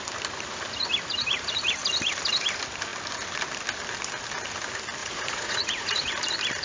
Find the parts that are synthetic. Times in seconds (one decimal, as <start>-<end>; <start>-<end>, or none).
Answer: 5.0-6.1